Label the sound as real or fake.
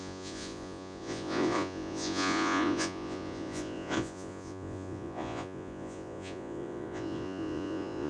fake